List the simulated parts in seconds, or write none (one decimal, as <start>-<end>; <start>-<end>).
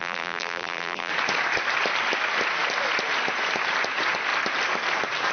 0.0-1.1